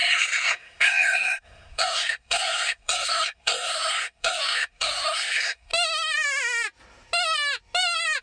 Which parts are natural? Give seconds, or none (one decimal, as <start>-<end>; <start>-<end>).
5.7-8.2